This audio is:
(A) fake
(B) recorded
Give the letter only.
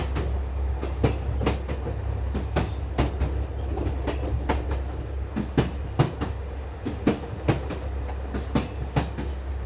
B